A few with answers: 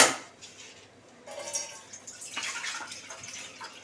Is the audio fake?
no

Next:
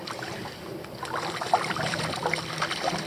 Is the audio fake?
no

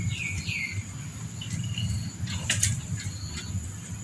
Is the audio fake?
no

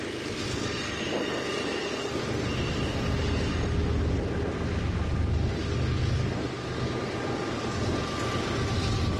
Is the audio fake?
no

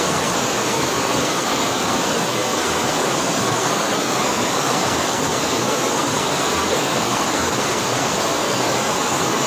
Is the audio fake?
yes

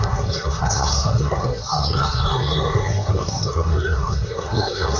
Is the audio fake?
yes